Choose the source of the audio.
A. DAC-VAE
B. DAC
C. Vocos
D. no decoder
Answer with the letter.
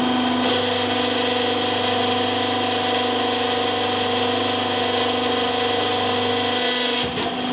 D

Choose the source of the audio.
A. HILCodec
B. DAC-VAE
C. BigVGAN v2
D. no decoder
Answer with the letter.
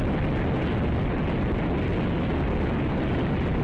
D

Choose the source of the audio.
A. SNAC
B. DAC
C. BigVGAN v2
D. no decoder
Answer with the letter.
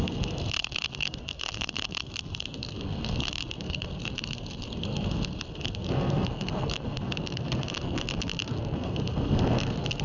A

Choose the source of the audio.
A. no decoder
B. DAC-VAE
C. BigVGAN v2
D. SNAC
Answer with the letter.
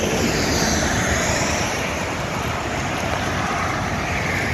A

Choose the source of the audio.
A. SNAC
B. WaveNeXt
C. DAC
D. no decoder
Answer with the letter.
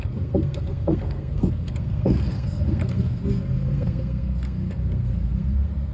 A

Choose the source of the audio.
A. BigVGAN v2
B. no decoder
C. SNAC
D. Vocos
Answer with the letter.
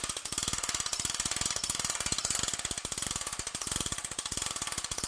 B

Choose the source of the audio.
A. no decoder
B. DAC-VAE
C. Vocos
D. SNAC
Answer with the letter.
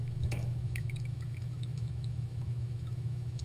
B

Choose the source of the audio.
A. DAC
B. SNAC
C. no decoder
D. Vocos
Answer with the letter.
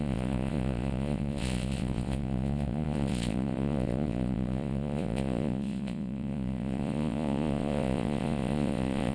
D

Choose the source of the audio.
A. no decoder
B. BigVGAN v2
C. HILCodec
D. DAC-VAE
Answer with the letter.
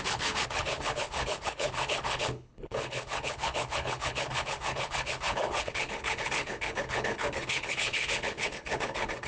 C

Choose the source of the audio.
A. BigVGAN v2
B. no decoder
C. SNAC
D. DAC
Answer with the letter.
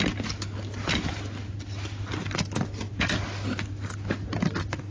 B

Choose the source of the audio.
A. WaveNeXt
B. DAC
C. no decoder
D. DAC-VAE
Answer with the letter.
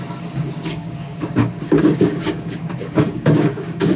B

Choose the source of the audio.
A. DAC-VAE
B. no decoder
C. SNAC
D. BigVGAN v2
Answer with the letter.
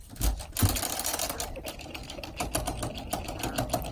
B